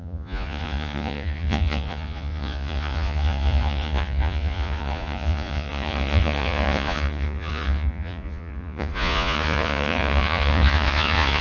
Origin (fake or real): fake